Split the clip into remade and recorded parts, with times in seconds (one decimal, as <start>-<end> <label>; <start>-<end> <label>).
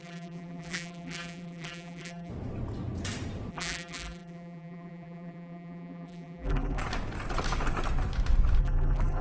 0.0-2.3 remade; 2.3-3.5 recorded; 3.5-6.8 remade; 6.8-8.6 recorded; 8.6-9.2 remade